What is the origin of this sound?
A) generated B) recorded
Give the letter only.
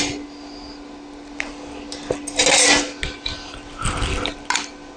B